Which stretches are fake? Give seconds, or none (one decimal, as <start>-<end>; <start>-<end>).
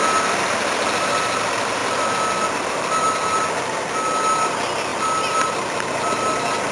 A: none